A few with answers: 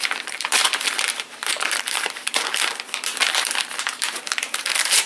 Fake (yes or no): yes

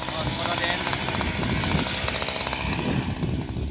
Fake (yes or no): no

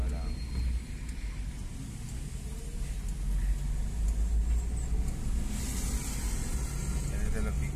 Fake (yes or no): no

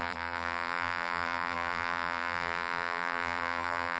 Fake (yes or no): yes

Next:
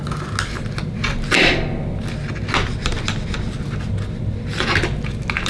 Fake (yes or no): no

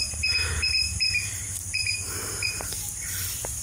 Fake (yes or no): no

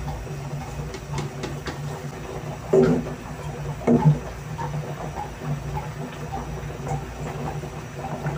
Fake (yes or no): no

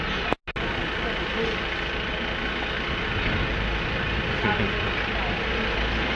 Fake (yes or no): no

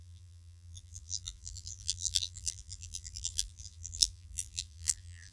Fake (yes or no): yes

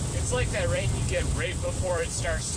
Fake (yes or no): yes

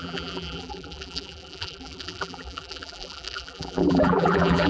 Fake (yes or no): yes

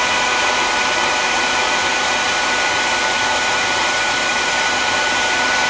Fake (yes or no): yes